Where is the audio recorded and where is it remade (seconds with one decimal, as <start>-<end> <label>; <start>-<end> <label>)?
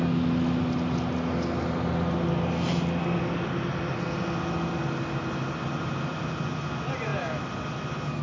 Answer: 0.0-8.2 recorded